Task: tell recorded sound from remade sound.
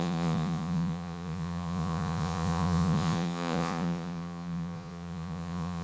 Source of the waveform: remade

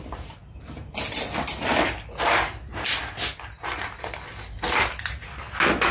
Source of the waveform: recorded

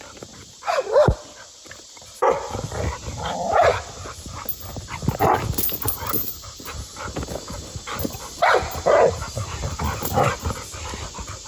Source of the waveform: recorded